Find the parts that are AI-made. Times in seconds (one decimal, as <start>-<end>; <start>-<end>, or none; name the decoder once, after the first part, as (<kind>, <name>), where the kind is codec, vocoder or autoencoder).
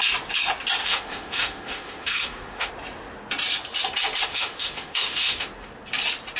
0.8-2.7 (autoencoder, DAC-VAE); 4.3-5.5